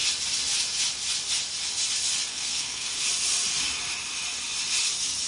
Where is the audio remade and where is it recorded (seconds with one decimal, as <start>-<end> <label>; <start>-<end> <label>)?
0.0-2.3 recorded; 2.3-2.9 remade; 2.9-5.3 recorded